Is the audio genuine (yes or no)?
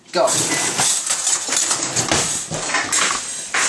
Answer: yes